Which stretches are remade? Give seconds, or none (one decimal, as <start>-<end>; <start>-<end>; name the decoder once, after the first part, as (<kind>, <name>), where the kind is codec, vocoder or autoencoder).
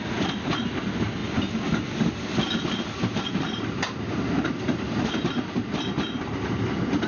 none